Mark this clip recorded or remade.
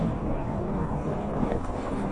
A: remade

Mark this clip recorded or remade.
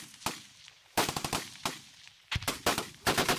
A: remade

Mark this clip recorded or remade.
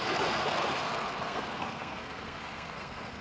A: remade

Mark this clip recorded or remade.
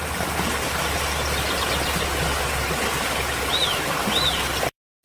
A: remade